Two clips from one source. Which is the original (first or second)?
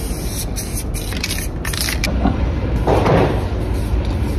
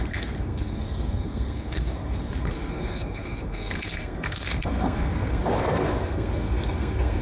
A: first